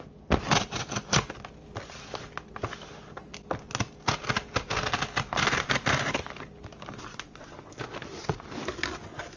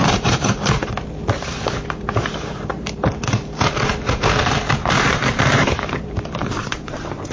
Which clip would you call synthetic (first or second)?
second